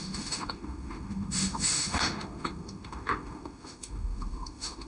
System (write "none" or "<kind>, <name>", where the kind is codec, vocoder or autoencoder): autoencoder, DAC-VAE